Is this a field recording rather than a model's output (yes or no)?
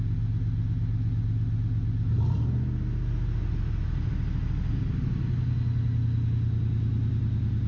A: yes